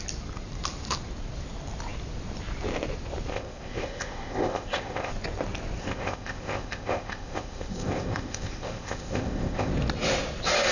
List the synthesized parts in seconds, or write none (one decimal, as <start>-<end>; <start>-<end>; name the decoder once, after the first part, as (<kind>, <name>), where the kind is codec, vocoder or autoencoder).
3.3-5.1 (codec, ZipCodec); 5.8-9.7